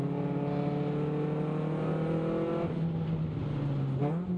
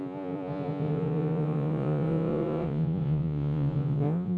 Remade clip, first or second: second